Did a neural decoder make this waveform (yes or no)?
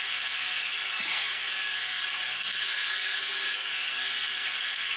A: yes